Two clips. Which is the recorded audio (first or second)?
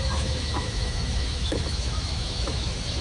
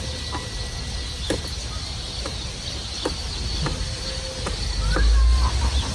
second